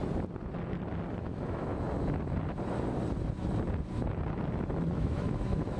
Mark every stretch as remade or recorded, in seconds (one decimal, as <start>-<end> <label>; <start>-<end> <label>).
0.0-1.2 recorded; 1.2-1.7 remade; 1.7-4.7 recorded; 4.7-5.8 remade